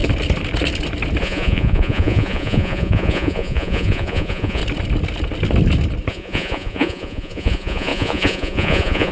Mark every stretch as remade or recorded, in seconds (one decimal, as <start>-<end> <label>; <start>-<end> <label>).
0.0-1.2 recorded; 1.2-4.6 remade; 4.6-6.1 recorded; 6.1-9.1 remade